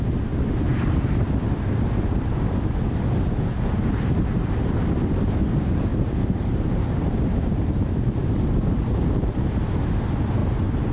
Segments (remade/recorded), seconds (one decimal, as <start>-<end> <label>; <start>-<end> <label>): 0.0-0.7 recorded; 0.7-2.6 remade; 2.6-5.9 recorded; 5.9-7.1 remade; 7.1-10.4 recorded; 10.4-10.9 remade